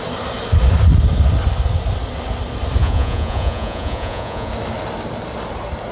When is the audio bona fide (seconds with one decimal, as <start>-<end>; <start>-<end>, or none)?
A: 0.0-2.8; 4.5-5.9